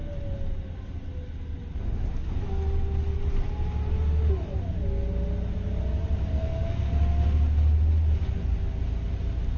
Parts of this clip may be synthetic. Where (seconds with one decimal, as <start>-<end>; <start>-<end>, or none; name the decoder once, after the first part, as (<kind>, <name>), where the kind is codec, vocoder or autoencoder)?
6.3-6.9 (codec, SNAC)